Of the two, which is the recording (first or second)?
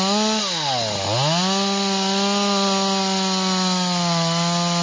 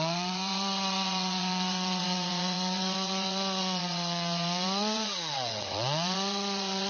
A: first